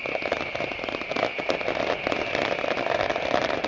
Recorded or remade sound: recorded